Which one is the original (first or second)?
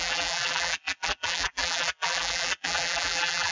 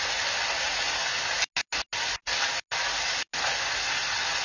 second